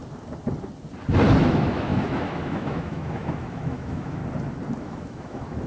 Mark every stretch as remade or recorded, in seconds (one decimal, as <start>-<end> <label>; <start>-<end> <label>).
0.0-1.4 recorded; 1.4-4.2 remade; 4.2-4.8 recorded; 4.8-5.7 remade